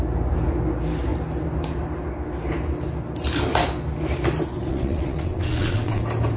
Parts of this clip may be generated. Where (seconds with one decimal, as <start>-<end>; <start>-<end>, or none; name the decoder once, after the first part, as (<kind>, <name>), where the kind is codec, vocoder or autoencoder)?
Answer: 4.7-6.0 (vocoder, WaveNeXt)